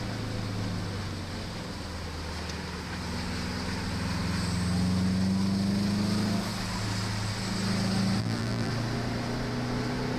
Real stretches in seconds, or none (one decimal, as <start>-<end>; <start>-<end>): 0.0-8.2; 8.7-10.2